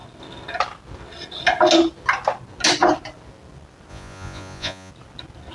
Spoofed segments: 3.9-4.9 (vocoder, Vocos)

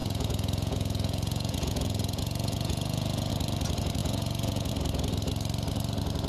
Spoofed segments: 0.0-3.3 (vocoder, Vocos); 4.0-4.7